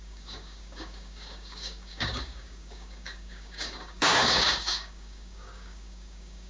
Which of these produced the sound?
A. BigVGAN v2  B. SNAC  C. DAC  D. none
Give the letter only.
C